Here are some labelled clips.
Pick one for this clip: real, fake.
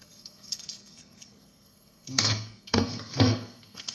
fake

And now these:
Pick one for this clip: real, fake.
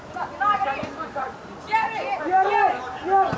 real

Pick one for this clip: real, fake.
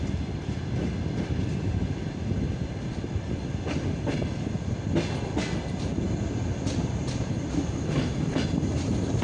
real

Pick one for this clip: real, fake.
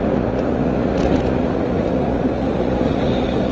fake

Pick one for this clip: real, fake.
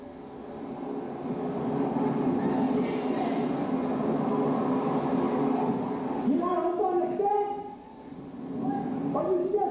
real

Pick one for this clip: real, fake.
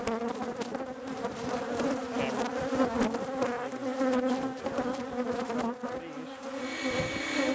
real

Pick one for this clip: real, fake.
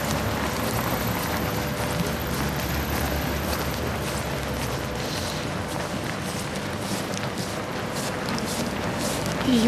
real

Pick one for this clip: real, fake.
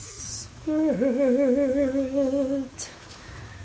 fake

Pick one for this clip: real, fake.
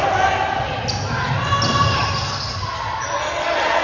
real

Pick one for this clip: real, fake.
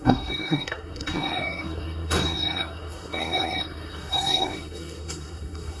fake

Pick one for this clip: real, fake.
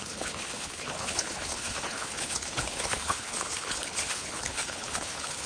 fake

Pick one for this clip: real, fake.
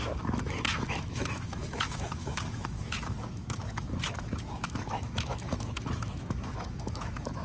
fake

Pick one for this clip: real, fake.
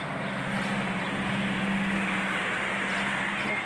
real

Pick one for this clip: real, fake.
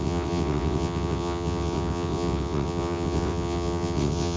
fake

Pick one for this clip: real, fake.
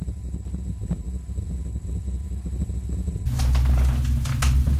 real